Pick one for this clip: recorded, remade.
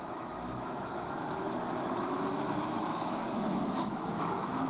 remade